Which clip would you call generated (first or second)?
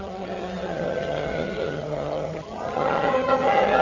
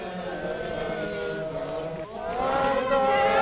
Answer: first